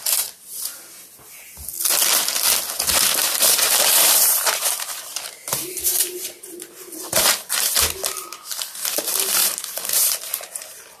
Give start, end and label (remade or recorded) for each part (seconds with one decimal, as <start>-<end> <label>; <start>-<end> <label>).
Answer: 0.0-3.2 recorded; 3.2-7.7 remade; 7.7-9.4 recorded; 9.4-11.0 remade